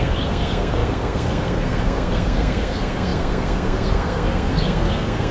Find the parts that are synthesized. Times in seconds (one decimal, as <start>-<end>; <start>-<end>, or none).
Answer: 0.0-5.3